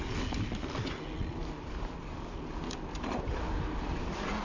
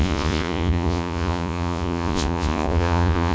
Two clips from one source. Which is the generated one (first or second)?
second